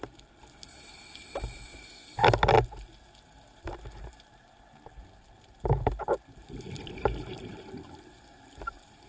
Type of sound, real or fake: real